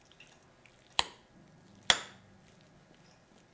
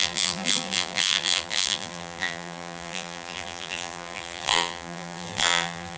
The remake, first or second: second